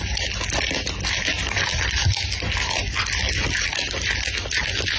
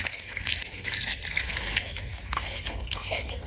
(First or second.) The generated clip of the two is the second